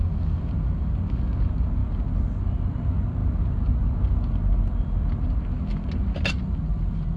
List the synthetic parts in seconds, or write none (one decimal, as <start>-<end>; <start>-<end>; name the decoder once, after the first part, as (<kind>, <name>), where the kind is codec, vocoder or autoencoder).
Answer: none